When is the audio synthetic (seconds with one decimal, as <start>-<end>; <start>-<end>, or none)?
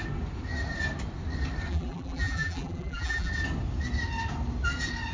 1.7-3.3